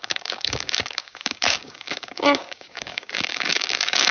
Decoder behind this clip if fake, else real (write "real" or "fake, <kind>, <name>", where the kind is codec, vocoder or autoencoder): fake, codec, DAC